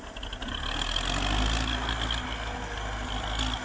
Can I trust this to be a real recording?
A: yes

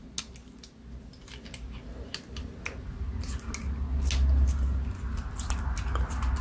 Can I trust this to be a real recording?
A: yes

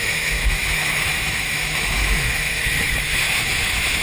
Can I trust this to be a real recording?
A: no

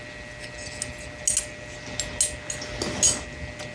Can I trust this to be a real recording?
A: yes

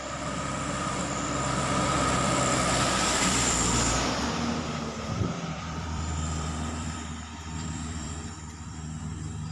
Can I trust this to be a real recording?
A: no